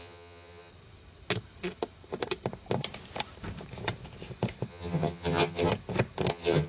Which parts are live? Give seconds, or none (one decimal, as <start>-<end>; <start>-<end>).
0.7-4.7; 5.7-6.3